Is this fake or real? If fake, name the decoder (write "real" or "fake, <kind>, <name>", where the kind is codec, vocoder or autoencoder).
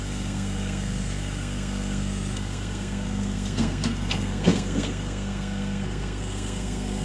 fake, codec, SNAC